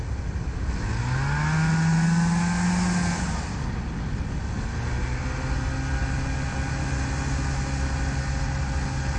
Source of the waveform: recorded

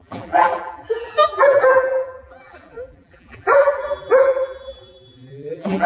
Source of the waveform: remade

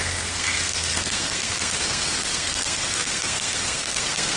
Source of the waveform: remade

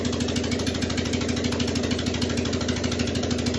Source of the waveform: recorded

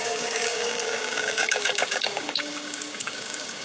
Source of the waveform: remade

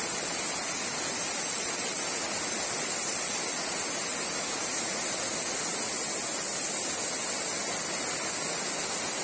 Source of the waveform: recorded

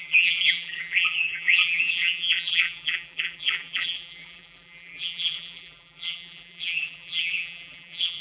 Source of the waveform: remade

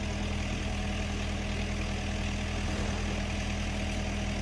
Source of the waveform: recorded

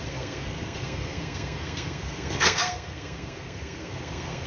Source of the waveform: remade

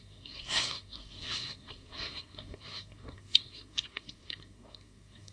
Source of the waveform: remade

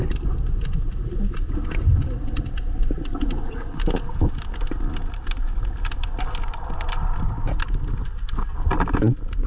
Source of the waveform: recorded